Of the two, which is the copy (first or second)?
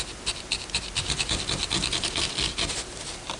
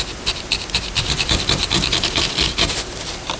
second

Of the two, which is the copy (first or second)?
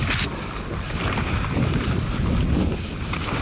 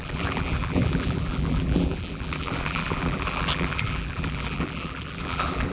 second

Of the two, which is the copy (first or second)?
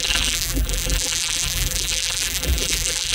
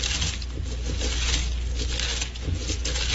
first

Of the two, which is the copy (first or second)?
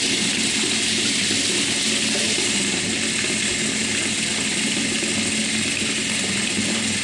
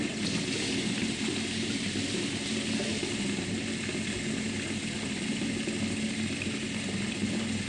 second